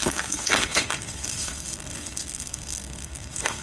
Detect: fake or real fake